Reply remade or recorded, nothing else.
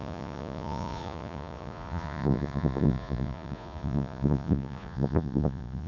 remade